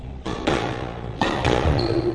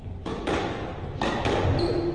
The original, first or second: second